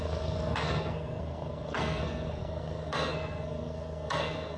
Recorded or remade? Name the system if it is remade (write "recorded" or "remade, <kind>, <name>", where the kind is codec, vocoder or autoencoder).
remade, codec, SNAC